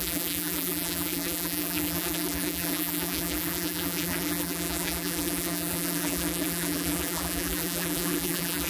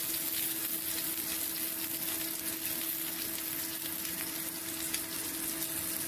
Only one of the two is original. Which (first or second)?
second